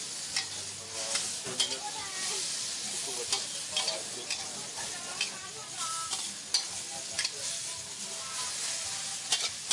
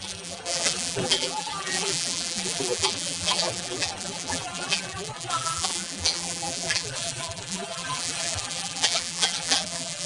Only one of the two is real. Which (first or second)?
first